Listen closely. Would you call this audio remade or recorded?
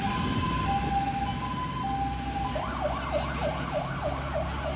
recorded